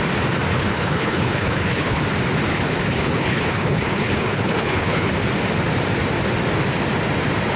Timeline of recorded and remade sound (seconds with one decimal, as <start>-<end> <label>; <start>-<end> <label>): 0.0-0.5 recorded; 0.5-2.0 remade; 2.0-2.5 recorded; 2.5-5.1 remade; 5.1-7.6 recorded